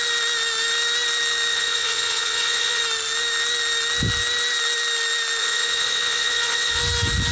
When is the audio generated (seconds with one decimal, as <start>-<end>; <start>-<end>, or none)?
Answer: 1.5-2.8; 5.4-6.8